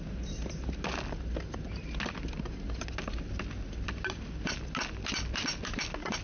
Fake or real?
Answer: real